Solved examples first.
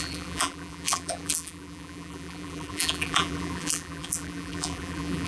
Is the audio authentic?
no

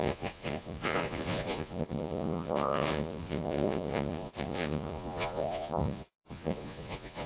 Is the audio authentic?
no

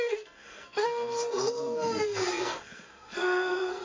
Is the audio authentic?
no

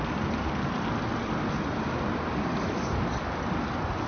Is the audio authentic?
yes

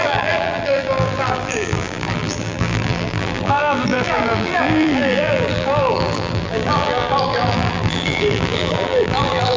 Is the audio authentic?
no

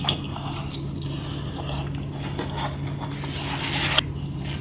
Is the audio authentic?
yes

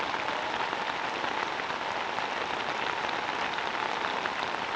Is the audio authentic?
yes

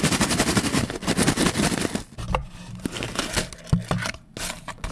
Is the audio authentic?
yes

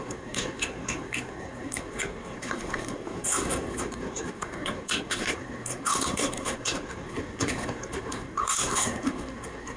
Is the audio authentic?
no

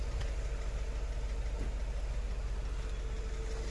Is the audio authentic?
yes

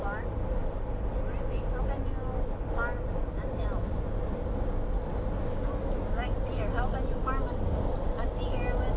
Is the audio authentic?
yes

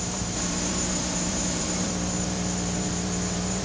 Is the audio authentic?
no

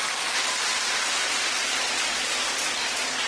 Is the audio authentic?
yes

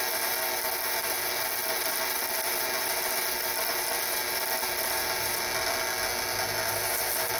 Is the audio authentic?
yes